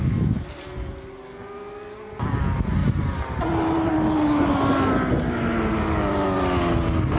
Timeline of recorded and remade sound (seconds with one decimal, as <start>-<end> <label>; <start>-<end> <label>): 0.0-2.8 recorded; 2.8-3.9 remade; 3.9-7.2 recorded